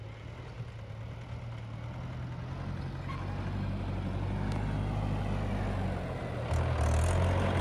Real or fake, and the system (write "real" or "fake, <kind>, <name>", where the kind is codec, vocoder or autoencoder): real